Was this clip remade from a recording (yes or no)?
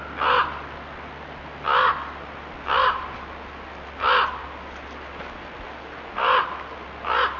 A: no